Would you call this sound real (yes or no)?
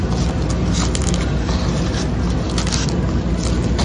yes